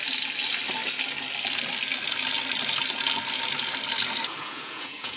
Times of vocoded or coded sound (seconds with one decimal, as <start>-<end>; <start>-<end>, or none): 4.4-5.2